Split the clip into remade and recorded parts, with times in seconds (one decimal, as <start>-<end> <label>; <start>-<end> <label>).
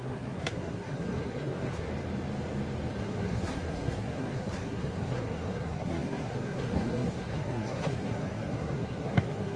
0.0-1.9 remade; 1.9-3.0 recorded; 3.0-9.6 remade